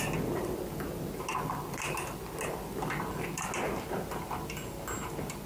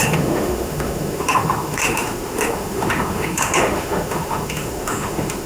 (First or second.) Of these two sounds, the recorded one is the first